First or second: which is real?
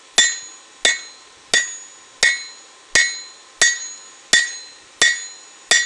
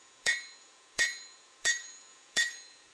first